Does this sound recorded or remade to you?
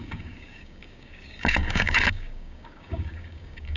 remade